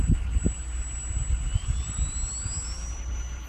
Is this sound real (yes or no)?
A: yes